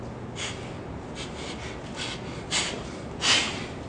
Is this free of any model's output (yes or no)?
yes